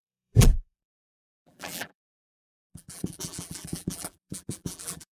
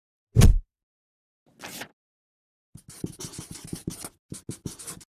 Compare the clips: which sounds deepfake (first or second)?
first